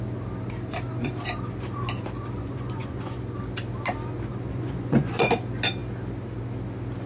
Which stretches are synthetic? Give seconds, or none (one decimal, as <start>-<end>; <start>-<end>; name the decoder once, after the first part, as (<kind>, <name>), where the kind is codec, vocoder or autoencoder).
2.4-3.2 (vocoder, Vocos); 4.3-5.3